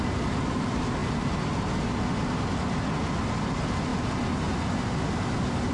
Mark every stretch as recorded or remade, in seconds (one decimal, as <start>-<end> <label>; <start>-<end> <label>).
0.0-5.7 recorded